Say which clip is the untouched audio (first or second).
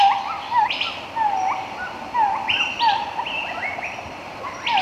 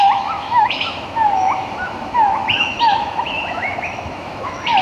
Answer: first